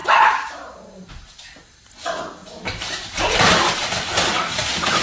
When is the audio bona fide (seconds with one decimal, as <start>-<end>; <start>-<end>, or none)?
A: 1.1-2.4; 3.7-5.0